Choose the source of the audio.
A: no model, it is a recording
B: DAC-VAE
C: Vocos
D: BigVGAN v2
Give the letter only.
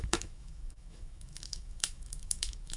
B